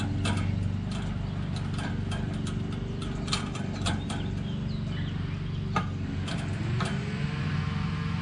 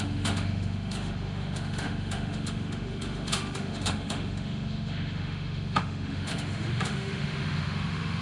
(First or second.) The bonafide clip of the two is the first